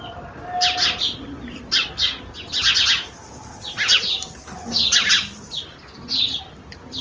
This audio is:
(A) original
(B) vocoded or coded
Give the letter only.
A